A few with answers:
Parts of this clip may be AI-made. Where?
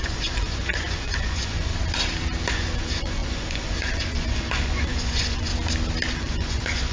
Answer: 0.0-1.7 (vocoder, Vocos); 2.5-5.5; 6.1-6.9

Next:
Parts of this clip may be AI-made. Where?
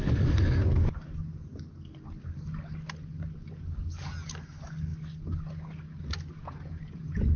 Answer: 6.4-7.4 (vocoder, Vocos)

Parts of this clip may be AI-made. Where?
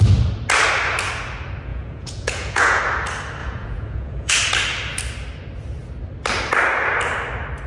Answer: 1.7-2.8 (vocoder, Vocos); 3.4-4.3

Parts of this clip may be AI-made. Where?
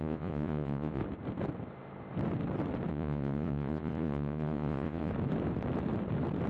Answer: 0.0-1.0 (vocoder, Vocos); 2.9-5.1